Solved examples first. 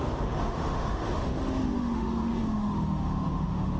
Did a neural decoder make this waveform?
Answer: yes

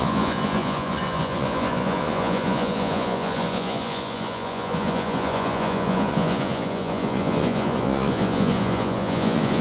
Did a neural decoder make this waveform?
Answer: yes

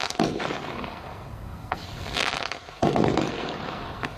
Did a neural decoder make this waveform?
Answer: yes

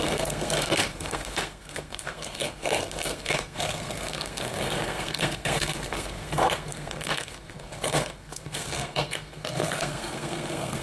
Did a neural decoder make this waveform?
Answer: yes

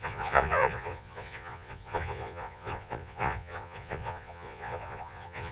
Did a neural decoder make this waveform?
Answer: yes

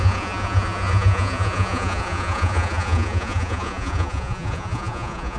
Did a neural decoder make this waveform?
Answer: yes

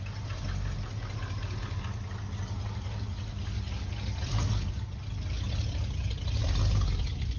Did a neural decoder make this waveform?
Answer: no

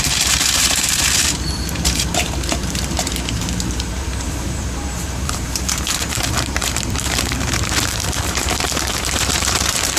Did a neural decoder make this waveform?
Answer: yes